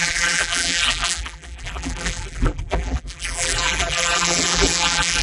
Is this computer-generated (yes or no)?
yes